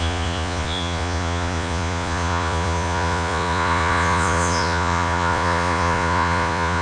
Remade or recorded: remade